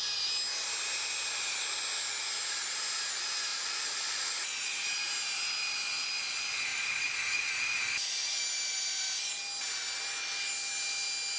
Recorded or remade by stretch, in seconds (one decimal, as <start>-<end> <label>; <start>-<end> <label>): 0.0-3.5 recorded; 3.5-4.5 remade; 4.5-6.7 recorded; 6.7-7.5 remade; 7.5-11.4 recorded

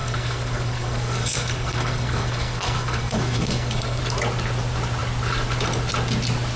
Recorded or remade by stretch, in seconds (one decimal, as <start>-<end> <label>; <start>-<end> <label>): 0.0-4.0 remade; 4.0-6.6 recorded

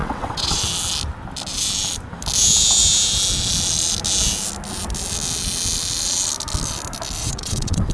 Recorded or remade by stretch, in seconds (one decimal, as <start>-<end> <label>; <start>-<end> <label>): 0.0-0.6 remade; 0.6-7.2 recorded; 7.2-7.9 remade

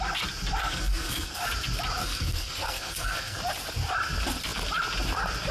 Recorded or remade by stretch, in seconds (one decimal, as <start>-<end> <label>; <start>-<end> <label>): 0.0-0.6 recorded; 0.6-1.4 remade; 1.4-2.0 recorded; 2.0-3.4 remade; 3.4-5.5 recorded